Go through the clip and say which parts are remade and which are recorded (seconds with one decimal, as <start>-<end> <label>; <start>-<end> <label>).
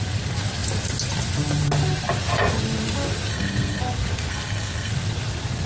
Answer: 0.0-3.3 recorded; 3.3-3.8 remade; 3.8-4.3 recorded; 4.3-4.9 remade; 4.9-5.7 recorded